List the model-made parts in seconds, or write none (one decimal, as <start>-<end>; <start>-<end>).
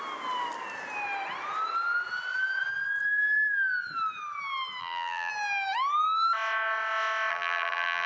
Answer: 4.8-5.3; 7.3-8.1